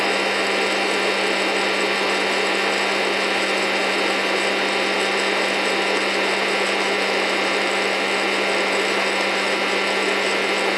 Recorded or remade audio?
recorded